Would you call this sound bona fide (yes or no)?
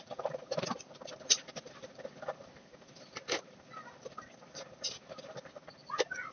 yes